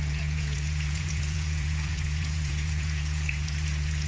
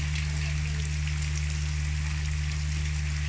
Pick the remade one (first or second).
first